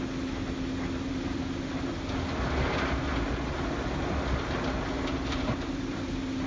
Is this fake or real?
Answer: real